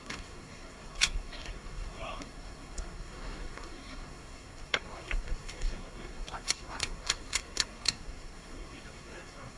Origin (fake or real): fake